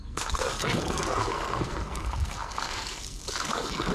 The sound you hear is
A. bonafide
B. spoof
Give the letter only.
B